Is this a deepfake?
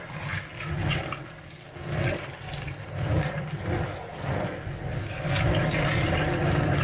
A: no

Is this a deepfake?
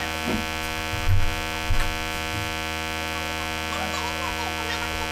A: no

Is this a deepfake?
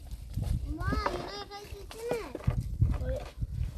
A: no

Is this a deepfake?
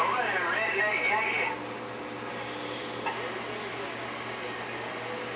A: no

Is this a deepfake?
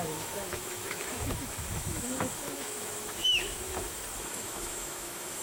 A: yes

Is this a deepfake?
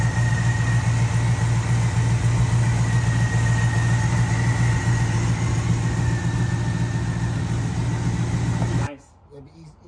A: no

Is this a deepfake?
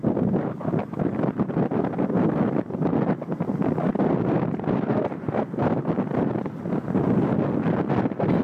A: no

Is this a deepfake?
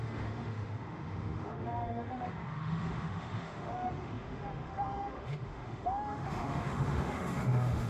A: yes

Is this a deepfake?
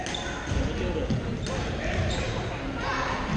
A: no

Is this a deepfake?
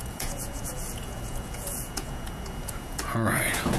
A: yes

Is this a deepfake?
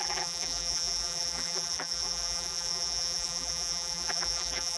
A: yes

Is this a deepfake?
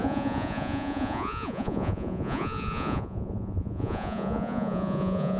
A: yes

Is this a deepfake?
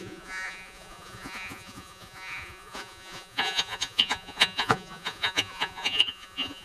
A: yes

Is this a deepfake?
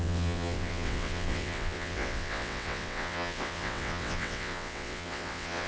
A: yes